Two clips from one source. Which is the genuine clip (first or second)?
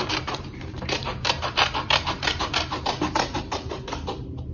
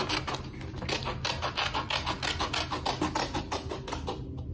second